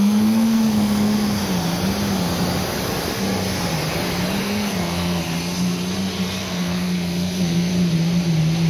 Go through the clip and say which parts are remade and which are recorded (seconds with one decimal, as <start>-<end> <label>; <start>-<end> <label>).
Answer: 0.0-1.4 remade; 1.4-4.4 recorded; 4.4-5.2 remade; 5.2-6.4 recorded; 6.4-7.7 remade; 7.7-8.7 recorded